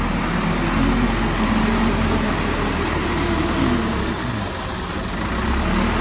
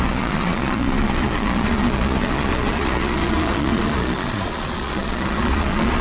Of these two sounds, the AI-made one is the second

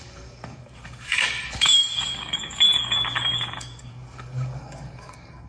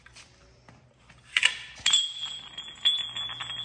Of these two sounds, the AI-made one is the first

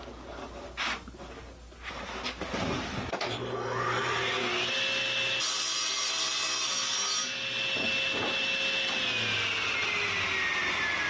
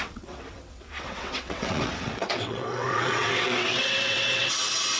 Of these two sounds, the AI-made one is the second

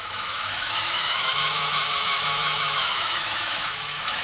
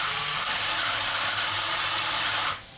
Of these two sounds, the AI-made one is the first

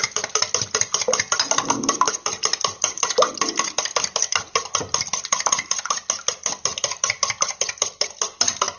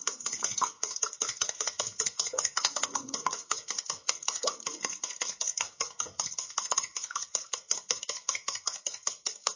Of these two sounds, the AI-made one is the second